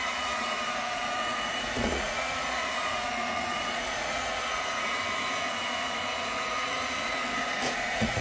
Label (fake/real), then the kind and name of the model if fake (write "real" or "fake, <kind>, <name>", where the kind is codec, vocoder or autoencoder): fake, vocoder, Vocos